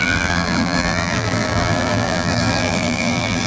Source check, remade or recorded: remade